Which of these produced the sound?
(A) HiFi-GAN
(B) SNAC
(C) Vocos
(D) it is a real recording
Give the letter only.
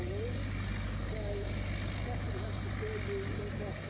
D